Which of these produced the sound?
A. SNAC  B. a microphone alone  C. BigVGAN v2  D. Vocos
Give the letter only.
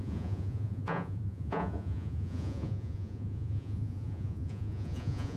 D